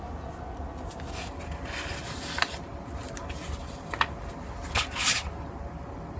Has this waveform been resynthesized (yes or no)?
no